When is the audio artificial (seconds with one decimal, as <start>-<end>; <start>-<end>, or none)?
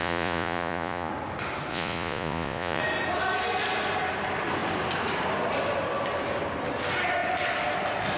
0.0-1.1; 1.7-2.8